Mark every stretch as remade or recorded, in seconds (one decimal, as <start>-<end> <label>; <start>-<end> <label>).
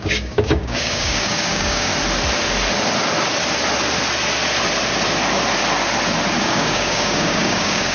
0.0-1.9 remade; 1.9-6.4 recorded; 6.4-7.9 remade